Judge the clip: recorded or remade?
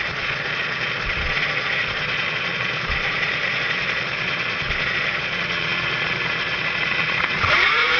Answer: remade